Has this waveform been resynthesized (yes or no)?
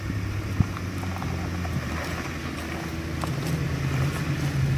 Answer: no